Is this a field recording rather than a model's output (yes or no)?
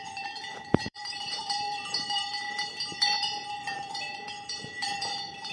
no